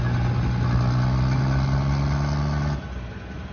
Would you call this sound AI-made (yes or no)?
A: no